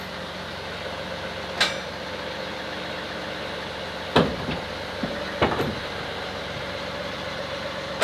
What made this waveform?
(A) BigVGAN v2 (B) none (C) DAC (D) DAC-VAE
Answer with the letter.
B